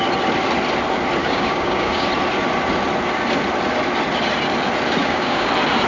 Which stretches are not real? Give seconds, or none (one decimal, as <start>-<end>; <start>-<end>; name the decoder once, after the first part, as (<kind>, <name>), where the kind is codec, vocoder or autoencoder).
1.2-2.1 (codec, DAC); 5.0-5.5